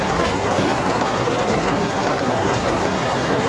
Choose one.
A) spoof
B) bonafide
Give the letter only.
A